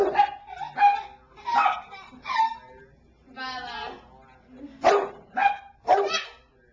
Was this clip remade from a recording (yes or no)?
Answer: no